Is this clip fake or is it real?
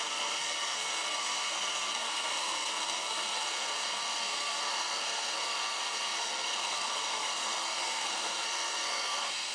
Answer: fake